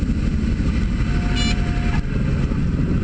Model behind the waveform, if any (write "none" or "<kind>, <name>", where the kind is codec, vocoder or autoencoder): none